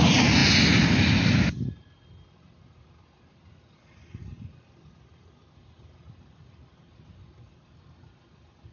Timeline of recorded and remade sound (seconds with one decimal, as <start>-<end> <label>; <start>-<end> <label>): 0.0-8.7 recorded